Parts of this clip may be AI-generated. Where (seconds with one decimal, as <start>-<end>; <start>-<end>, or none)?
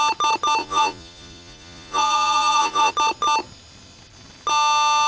0.6-2.9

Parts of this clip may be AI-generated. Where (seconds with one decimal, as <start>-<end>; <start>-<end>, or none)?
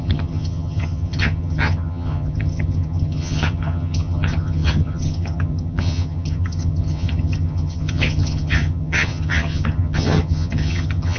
0.0-11.2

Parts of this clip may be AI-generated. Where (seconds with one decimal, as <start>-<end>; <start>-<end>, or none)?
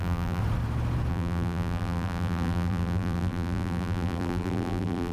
0.0-0.4; 1.1-5.1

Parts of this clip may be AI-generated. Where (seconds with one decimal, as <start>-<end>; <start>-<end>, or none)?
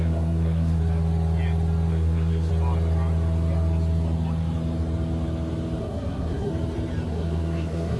0.0-0.8; 1.9-2.5; 5.8-6.5; 7.1-8.0